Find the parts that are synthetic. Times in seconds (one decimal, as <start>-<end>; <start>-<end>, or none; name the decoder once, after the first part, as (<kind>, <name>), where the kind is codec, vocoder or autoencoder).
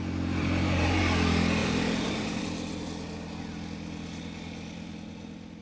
0.4-1.0 (vocoder, BigVGAN v2); 1.6-2.4